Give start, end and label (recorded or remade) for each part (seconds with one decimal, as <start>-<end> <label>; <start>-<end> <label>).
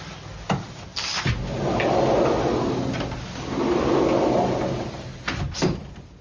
0.0-6.2 recorded